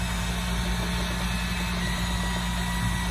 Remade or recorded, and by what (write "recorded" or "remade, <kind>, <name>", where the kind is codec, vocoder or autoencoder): recorded